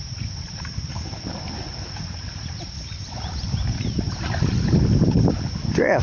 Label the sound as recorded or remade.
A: recorded